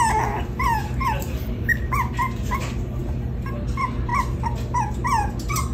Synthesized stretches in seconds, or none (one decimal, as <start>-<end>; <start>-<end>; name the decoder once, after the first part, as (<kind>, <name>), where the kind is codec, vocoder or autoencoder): 0.8-1.9 (vocoder, BigVGAN v2)